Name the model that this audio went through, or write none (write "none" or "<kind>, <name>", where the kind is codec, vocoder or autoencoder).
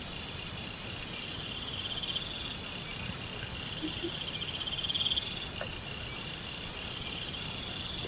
none